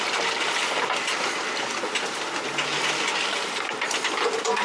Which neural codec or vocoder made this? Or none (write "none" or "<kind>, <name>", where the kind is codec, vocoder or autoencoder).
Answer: none